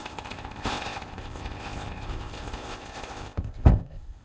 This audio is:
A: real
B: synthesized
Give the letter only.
B